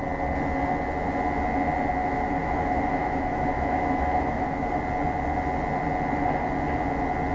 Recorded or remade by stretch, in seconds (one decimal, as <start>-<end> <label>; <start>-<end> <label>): 0.0-2.0 recorded; 2.0-4.8 remade; 4.8-7.3 recorded